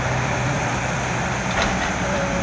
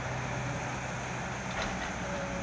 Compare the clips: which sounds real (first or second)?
second